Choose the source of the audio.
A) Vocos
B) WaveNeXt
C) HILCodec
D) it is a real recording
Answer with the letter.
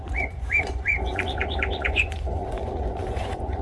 A